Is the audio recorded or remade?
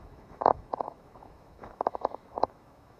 remade